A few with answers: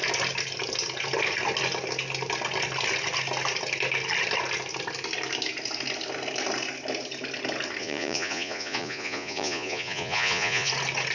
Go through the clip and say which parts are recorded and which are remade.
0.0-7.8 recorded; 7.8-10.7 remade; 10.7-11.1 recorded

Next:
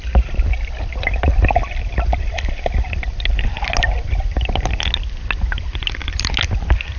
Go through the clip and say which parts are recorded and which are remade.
0.0-7.0 recorded

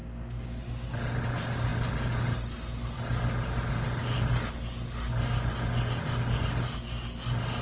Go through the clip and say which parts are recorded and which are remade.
0.0-0.6 remade; 0.6-7.6 recorded

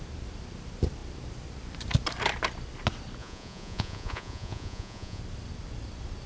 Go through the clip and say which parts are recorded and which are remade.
0.0-3.2 recorded; 3.2-5.2 remade; 5.2-6.3 recorded

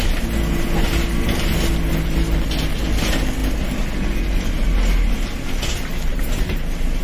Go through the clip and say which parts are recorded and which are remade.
0.0-6.1 recorded; 6.1-7.0 remade

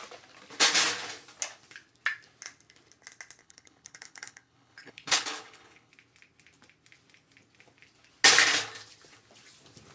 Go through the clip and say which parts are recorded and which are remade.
0.0-3.4 recorded; 3.4-5.9 remade; 5.9-9.9 recorded

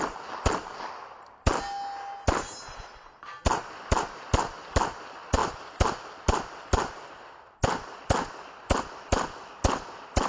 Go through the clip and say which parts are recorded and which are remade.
0.0-10.3 recorded